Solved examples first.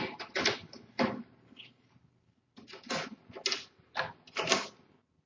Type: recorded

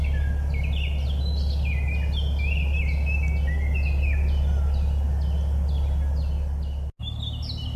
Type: recorded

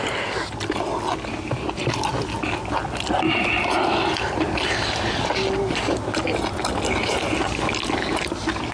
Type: recorded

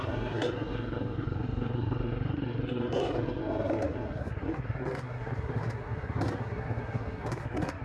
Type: remade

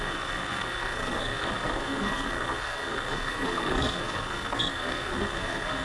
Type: remade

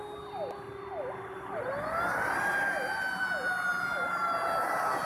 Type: recorded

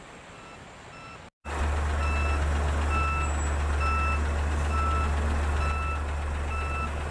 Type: recorded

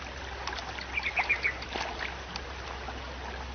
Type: recorded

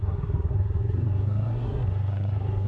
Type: remade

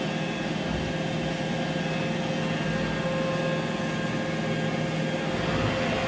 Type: recorded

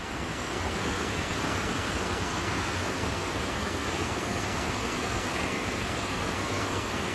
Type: remade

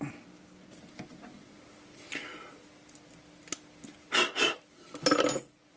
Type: recorded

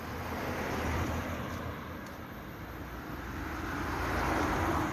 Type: recorded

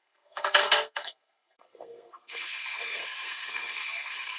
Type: remade